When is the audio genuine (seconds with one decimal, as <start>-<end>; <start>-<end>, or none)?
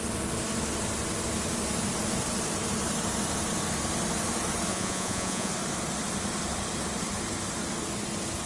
0.0-4.7; 5.5-8.5